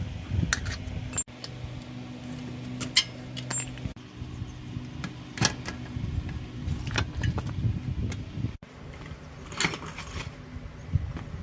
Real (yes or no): yes